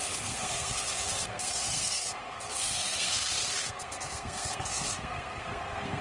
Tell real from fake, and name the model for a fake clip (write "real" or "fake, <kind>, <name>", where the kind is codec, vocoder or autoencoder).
fake, codec, SNAC